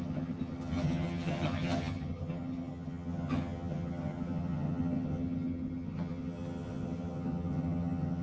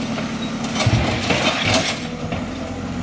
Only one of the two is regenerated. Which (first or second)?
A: first